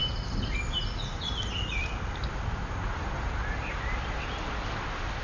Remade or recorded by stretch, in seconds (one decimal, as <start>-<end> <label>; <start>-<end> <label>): 0.0-5.2 recorded